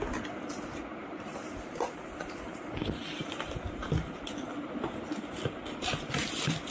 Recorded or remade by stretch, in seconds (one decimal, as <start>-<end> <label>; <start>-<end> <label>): 0.0-0.9 recorded; 0.9-2.6 remade; 2.6-6.7 recorded